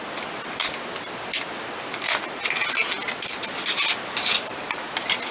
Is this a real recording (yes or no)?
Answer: yes